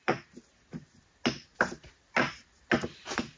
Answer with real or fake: real